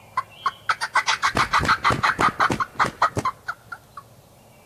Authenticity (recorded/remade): recorded